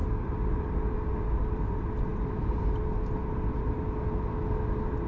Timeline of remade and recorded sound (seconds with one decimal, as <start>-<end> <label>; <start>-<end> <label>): 0.0-5.1 recorded